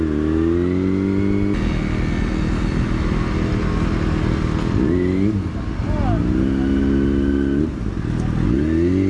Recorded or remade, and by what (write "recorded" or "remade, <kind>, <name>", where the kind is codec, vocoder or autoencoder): recorded